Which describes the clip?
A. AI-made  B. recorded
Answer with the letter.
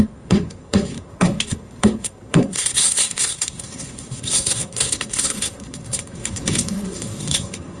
A